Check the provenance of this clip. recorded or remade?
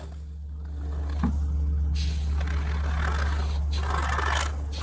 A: recorded